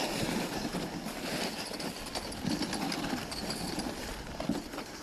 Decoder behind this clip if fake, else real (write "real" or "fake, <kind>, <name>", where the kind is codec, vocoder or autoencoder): real